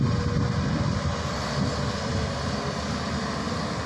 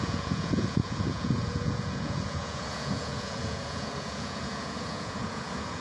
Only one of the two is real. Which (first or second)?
first